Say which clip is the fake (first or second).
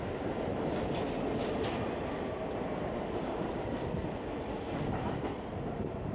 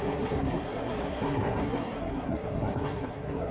second